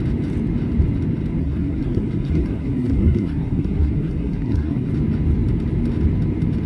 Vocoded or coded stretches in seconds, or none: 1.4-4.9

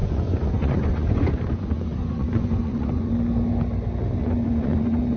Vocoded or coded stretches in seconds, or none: 0.0-3.1; 4.2-5.2

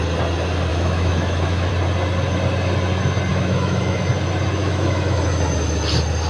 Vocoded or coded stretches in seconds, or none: 0.7-1.7; 3.3-4.0; 4.6-5.2

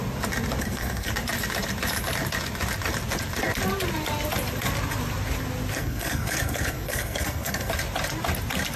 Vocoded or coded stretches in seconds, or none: 0.6-1.1; 5.7-7.7

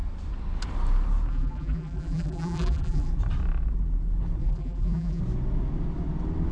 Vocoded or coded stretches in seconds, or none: 1.3-3.1; 4.4-5.2